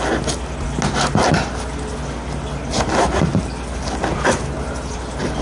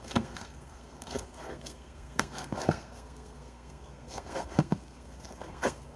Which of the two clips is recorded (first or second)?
first